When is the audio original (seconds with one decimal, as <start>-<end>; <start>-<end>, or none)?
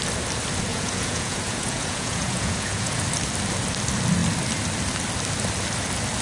0.0-0.7; 3.0-6.2